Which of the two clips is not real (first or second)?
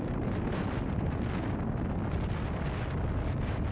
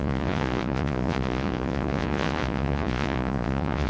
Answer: second